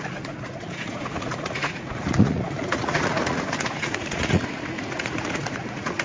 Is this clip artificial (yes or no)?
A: yes